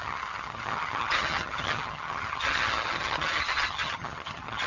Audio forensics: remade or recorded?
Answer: remade